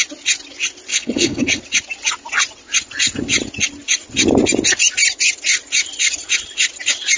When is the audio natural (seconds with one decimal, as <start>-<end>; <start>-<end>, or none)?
0.0-0.9; 1.6-7.2